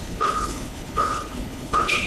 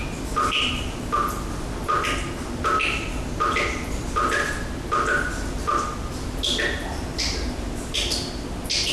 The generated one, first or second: first